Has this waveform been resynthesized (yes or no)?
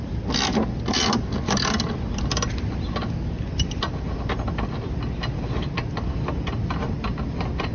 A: no